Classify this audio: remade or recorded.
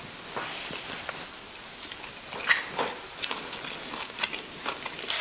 recorded